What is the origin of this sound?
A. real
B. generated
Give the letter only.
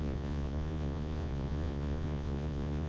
B